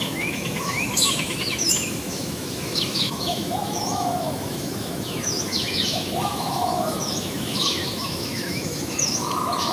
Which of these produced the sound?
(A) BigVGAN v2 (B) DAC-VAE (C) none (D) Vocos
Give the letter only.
B